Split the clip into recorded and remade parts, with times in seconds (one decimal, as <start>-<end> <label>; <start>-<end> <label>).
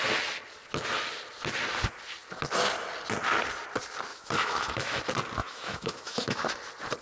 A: 0.0-4.1 recorded; 4.1-5.0 remade; 5.0-5.4 recorded; 5.4-6.4 remade; 6.4-7.0 recorded